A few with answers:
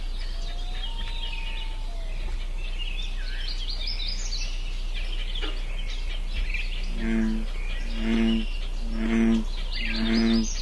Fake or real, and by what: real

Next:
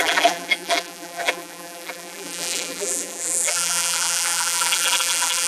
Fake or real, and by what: fake, vocoder, BigVGAN v2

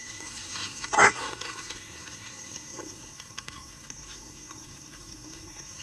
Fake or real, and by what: fake, codec, SNAC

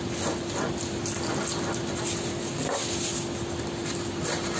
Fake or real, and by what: real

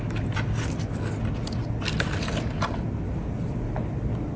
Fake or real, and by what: real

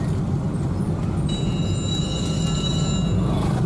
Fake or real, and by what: real